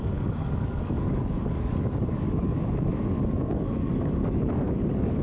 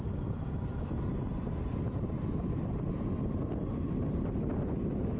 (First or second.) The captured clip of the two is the second